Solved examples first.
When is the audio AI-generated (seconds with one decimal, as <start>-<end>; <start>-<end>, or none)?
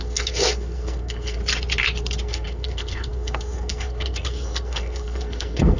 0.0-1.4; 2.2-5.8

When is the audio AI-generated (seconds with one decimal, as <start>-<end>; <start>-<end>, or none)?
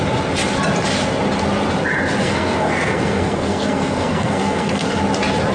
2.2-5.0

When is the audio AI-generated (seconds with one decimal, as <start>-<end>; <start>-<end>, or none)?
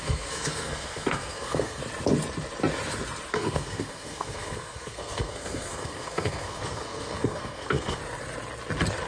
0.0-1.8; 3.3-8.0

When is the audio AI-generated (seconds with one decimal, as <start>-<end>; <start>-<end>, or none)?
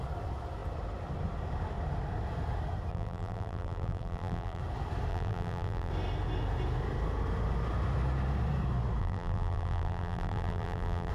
2.9-4.6; 5.1-5.9; 9.0-11.1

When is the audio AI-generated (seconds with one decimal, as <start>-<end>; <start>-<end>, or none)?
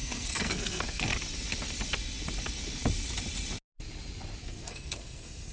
0.0-1.1; 4.4-5.5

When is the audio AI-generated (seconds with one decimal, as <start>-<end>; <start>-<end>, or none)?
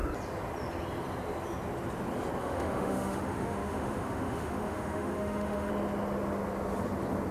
2.4-5.7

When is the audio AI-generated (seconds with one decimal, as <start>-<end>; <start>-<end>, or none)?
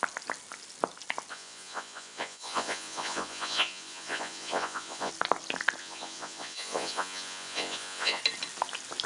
1.3-5.1; 5.8-8.2